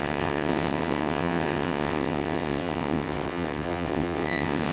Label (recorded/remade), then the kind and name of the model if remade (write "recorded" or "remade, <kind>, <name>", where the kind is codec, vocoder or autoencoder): remade, vocoder, WaveNeXt